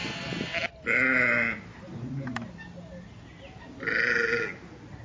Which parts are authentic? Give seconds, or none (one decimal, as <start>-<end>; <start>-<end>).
0.0-5.0